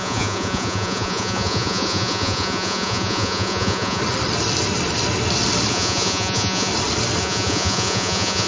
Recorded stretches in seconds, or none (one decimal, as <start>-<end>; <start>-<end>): 4.0-5.7; 6.7-7.2